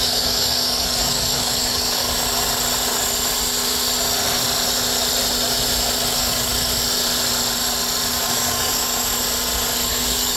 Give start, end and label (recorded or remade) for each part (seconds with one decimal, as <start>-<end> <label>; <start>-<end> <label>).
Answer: 0.0-2.0 remade; 2.0-6.1 recorded; 6.1-6.5 remade; 6.5-8.1 recorded; 8.1-9.1 remade; 9.1-9.9 recorded; 9.9-10.4 remade